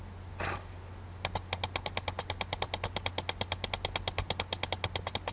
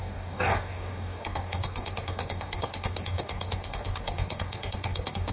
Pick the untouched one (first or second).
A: first